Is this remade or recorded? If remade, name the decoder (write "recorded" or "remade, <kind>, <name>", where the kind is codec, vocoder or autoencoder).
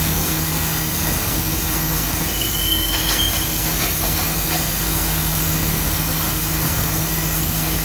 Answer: remade, codec, SNAC